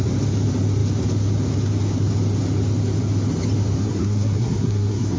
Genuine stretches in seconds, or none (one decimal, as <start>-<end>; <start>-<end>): 0.0-3.8